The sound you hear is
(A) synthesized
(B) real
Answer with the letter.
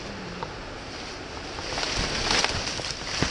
B